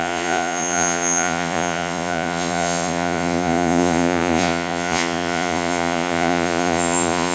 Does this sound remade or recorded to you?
remade